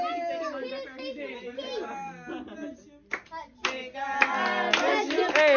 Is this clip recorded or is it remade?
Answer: recorded